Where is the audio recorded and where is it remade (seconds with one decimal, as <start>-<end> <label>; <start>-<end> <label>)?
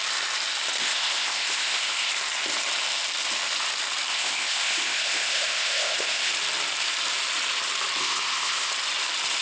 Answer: 0.0-0.8 recorded; 0.8-2.1 remade; 2.1-4.1 recorded; 4.1-6.3 remade; 6.3-8.0 recorded; 8.0-8.7 remade; 8.7-9.4 recorded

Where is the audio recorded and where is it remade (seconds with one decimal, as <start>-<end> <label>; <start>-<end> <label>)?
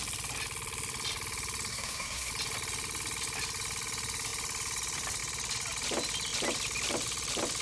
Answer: 0.0-1.7 recorded; 1.7-2.3 remade; 2.3-7.6 recorded